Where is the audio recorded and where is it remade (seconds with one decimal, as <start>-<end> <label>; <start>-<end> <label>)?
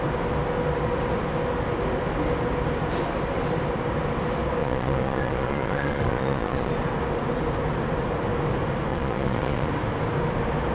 0.0-4.6 recorded; 4.6-6.7 remade; 6.7-8.9 recorded; 8.9-9.7 remade; 9.7-10.7 recorded